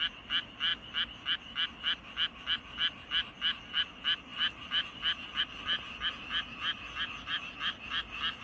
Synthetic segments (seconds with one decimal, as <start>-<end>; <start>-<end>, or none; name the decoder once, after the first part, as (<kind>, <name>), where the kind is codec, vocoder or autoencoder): none